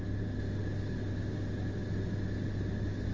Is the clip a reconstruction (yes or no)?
no